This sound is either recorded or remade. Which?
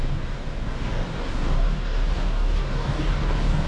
remade